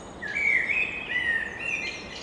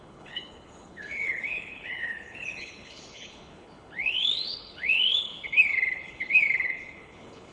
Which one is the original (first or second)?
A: first